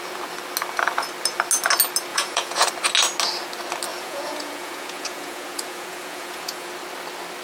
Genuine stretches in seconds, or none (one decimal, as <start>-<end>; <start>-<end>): 0.0-2.1; 2.7-3.9; 6.7-7.4